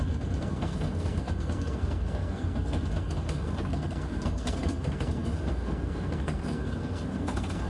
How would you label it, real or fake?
fake